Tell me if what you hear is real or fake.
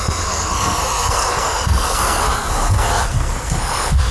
fake